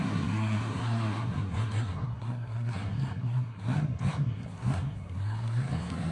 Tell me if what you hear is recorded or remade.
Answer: remade